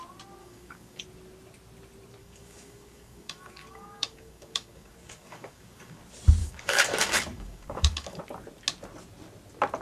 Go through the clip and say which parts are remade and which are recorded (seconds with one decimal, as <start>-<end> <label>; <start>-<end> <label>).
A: 0.0-0.4 recorded; 0.4-1.0 remade; 1.0-2.2 recorded; 2.2-6.0 remade; 6.0-6.4 recorded; 6.4-8.2 remade; 8.2-9.8 recorded